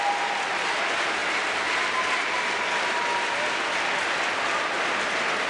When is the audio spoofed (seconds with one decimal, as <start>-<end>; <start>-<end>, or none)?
none